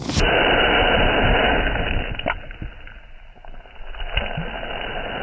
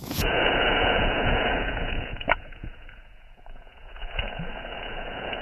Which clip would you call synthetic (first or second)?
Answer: second